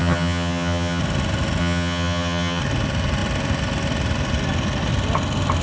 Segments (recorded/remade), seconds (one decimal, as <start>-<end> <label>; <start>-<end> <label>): 0.0-1.0 remade; 1.0-1.6 recorded; 1.6-2.6 remade; 2.6-5.6 recorded